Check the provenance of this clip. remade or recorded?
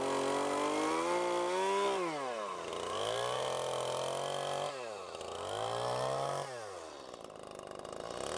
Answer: recorded